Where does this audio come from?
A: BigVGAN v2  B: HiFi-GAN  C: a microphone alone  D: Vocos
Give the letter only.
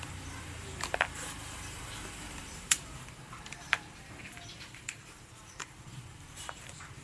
A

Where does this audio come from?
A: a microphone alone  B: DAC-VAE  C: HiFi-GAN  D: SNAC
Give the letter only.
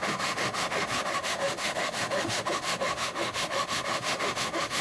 B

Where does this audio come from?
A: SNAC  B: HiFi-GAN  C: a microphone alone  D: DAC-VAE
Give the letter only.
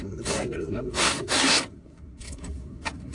A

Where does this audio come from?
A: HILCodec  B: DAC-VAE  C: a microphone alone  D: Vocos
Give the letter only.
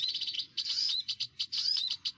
D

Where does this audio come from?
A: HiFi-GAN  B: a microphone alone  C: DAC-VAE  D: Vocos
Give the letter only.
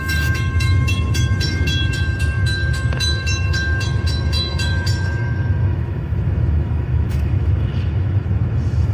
C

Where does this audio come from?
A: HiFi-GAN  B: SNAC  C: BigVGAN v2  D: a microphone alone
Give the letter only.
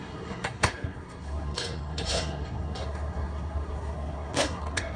B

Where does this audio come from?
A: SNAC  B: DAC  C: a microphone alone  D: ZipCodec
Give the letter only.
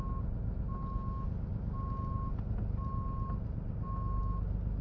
C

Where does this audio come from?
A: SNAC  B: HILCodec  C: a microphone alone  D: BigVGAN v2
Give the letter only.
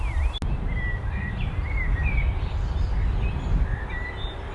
C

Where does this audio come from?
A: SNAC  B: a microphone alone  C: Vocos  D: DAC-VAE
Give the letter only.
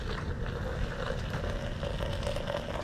B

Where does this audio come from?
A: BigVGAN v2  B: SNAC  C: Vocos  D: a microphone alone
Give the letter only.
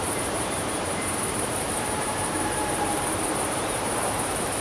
A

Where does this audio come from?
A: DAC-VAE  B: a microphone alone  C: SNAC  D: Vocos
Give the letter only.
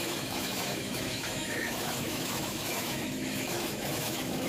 A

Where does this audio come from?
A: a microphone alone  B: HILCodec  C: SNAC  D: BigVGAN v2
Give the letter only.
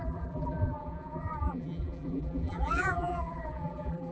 D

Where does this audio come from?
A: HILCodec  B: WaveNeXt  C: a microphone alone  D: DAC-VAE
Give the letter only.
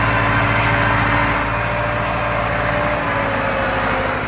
C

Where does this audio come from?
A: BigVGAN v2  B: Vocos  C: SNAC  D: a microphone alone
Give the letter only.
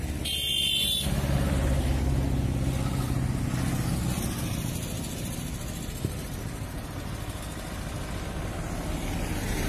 D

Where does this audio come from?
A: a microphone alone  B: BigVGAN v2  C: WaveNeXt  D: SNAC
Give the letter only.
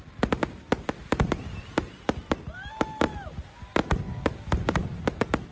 A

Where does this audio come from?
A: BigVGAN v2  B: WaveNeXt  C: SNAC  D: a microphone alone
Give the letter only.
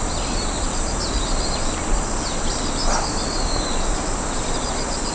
D